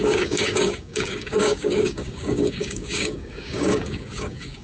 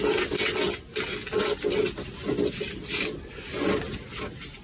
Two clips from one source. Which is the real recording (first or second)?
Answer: second